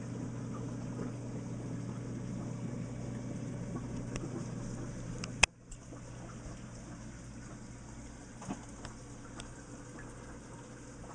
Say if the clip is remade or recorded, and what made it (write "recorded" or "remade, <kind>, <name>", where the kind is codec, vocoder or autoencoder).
recorded